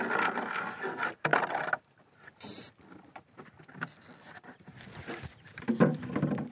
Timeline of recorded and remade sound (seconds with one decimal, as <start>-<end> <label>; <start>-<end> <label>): 0.0-1.3 recorded; 1.3-4.7 remade; 4.7-6.5 recorded